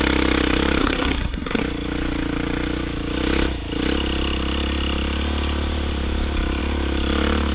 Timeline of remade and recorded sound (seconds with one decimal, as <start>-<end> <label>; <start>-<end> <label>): 0.0-0.8 recorded; 0.8-1.6 remade; 1.6-7.5 recorded